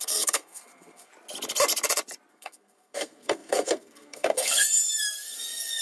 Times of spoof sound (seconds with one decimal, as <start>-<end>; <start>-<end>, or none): 0.0-1.1; 2.3-5.8